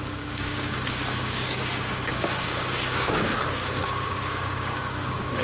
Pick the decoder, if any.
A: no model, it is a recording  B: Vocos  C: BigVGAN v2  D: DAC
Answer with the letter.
D